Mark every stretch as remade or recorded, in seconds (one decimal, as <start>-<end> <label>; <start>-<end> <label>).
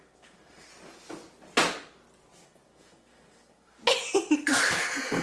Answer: 0.0-0.7 remade; 0.7-2.4 recorded; 2.4-3.8 remade; 3.8-4.5 recorded; 4.5-5.2 remade